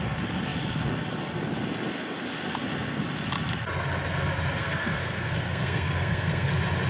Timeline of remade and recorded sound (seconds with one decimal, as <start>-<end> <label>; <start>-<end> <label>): 0.0-4.6 recorded; 4.6-6.5 remade; 6.5-6.9 recorded